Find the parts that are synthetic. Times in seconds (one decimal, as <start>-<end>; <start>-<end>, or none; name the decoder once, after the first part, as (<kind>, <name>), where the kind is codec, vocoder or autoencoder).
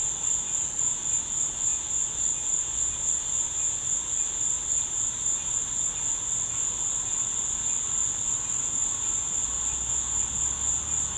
none